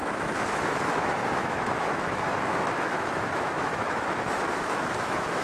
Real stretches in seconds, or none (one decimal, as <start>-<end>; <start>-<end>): none